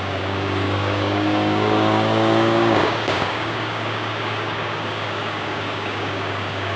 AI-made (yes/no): yes